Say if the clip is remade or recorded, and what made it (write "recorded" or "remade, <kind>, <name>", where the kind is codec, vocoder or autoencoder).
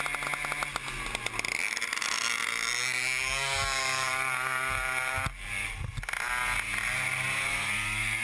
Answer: recorded